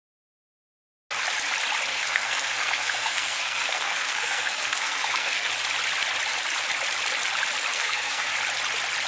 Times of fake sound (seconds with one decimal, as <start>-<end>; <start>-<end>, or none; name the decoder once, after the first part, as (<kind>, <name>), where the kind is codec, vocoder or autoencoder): 1.9-5.5 (codec, SNAC); 7.7-8.3